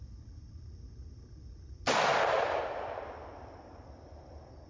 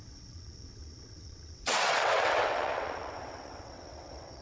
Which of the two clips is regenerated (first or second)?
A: second